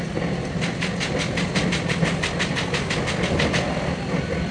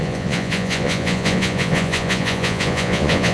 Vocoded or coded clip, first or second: second